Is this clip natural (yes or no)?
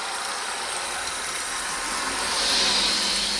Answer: no